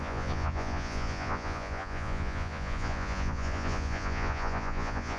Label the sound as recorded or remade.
remade